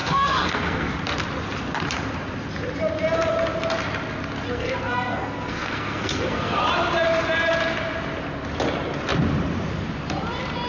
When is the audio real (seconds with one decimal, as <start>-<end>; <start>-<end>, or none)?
0.9-4.5; 6.6-10.7